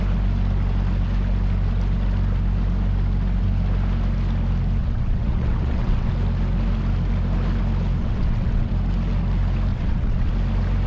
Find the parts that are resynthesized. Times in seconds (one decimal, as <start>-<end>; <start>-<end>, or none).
4.8-6.1; 8.0-8.7; 9.7-10.3